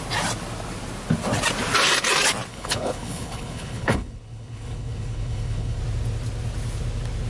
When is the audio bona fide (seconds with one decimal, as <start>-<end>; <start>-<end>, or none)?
0.0-2.5; 5.8-7.3